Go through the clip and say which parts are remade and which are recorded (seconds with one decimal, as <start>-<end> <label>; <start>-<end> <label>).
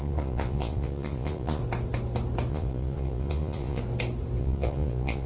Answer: 0.0-1.6 remade; 1.6-2.5 recorded; 2.5-3.8 remade; 3.8-4.4 recorded; 4.4-5.3 remade